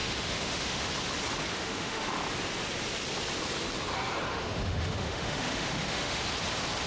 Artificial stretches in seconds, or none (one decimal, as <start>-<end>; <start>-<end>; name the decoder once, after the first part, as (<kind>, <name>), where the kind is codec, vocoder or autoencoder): 0.0-0.9 (autoencoder, DAC-VAE); 1.5-2.1; 4.3-6.2